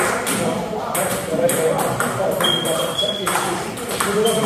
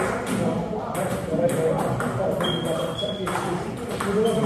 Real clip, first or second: second